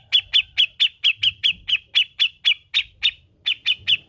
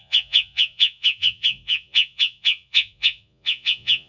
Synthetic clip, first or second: second